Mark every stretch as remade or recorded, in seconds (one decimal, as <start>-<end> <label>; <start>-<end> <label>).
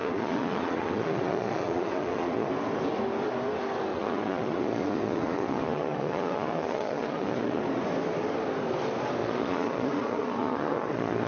0.0-2.5 remade; 2.5-3.9 recorded; 3.9-7.6 remade; 7.6-9.2 recorded; 9.2-11.3 remade